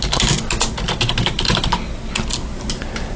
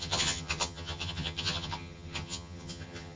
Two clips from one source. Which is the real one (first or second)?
first